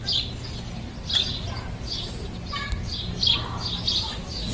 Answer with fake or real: real